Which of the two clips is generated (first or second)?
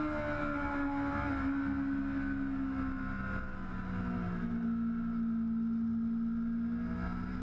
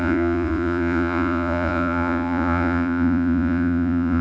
second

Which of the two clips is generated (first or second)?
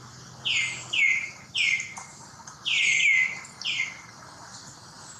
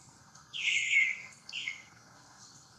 second